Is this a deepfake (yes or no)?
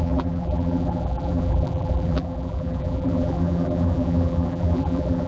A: yes